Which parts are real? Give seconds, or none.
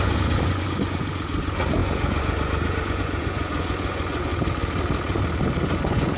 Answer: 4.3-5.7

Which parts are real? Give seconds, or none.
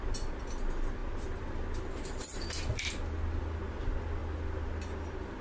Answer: 0.0-5.4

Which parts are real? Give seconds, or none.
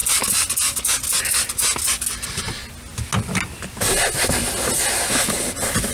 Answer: 0.0-5.9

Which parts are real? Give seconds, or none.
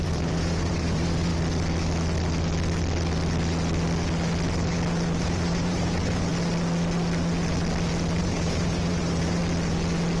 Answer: 1.3-5.2; 6.3-8.2; 9.4-10.2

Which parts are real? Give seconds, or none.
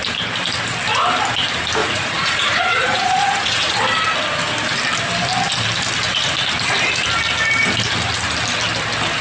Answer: 0.0-1.8; 3.7-9.2